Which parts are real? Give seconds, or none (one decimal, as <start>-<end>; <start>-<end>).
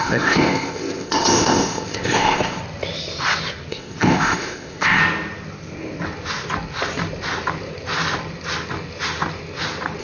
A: 2.6-3.7; 5.0-10.0